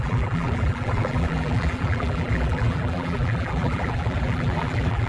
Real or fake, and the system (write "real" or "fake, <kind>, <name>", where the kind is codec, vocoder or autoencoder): fake, vocoder, BigVGAN v2